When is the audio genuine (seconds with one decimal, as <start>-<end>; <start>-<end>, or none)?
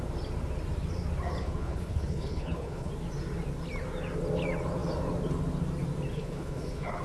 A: 0.0-1.4; 2.9-6.1